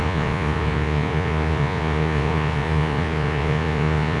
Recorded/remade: remade